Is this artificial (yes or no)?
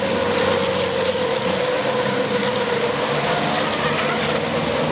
no